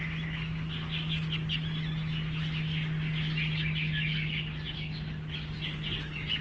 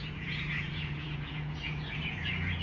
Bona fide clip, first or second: first